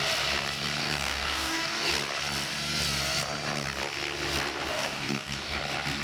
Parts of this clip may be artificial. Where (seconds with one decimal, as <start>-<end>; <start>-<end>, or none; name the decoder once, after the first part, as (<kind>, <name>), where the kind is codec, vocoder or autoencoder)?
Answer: 0.8-1.9 (codec, DAC); 4.7-5.6